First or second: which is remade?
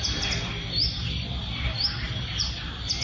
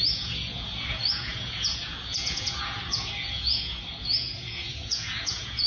second